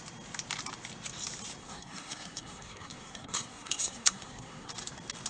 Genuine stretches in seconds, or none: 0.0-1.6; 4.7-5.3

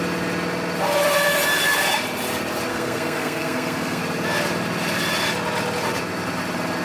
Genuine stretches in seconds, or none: 0.0-2.7; 4.0-6.8